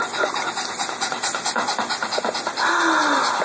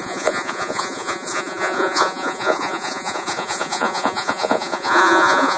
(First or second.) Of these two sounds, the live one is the first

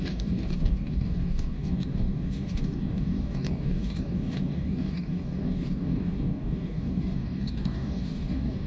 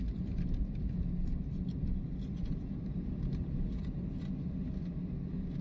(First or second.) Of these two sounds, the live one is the second